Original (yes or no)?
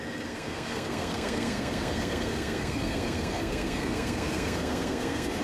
no